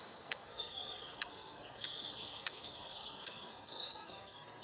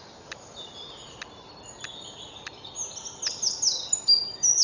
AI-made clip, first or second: first